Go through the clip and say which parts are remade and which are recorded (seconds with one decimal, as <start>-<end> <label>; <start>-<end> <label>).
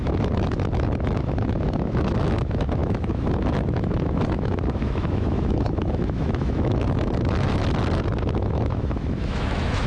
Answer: 0.0-7.6 remade; 7.6-8.4 recorded; 8.4-9.9 remade